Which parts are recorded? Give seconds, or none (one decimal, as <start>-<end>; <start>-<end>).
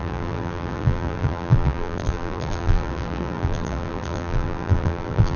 none